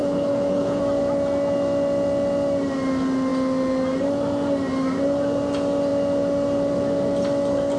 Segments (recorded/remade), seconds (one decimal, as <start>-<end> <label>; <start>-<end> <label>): 0.0-0.8 remade; 0.8-7.8 recorded